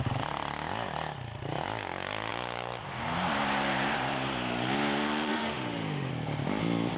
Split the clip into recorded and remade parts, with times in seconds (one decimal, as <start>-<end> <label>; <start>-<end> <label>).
0.0-5.3 recorded; 5.3-6.1 remade; 6.1-7.0 recorded